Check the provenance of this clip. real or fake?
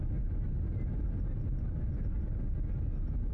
real